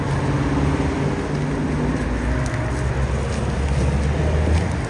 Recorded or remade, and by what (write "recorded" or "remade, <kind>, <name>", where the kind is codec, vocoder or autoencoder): recorded